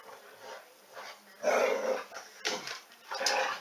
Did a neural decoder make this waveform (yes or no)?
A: no